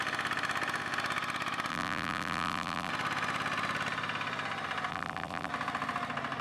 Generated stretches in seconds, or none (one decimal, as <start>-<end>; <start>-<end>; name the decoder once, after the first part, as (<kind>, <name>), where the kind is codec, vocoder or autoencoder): 1.7-2.9 (vocoder, BigVGAN v2); 4.9-5.5